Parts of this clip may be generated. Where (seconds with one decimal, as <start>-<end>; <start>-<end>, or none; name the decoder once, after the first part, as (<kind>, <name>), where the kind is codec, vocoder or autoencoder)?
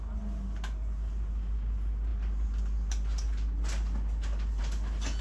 none